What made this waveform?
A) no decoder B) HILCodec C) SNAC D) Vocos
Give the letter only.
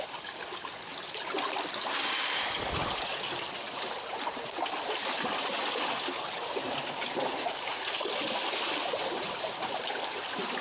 A